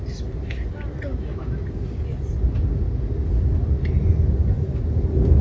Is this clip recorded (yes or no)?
yes